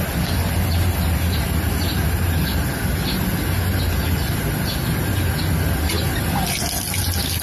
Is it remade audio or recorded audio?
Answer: recorded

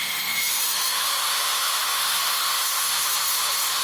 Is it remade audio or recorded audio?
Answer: remade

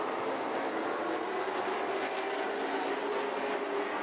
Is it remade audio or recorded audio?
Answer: recorded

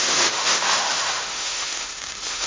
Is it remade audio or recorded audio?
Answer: remade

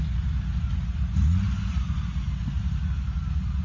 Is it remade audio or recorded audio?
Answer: recorded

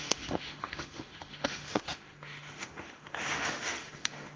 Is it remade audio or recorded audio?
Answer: remade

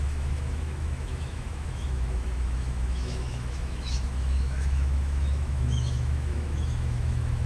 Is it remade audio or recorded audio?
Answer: remade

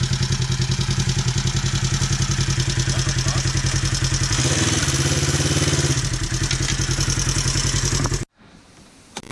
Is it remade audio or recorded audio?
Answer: recorded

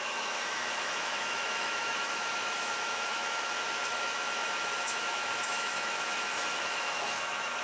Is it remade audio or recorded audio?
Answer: remade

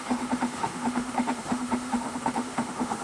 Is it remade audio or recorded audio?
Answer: remade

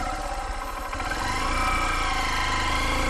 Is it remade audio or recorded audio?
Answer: recorded